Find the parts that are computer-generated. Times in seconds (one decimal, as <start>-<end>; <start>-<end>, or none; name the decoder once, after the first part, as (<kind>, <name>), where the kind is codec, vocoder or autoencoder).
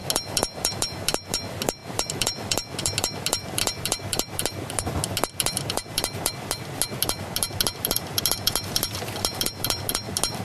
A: none